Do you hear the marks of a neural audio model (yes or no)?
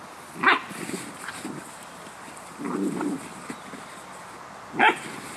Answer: no